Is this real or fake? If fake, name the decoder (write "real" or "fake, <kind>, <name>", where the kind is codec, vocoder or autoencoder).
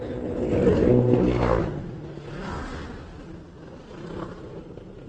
real